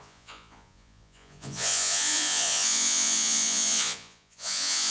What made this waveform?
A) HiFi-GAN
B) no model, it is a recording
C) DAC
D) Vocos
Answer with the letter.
D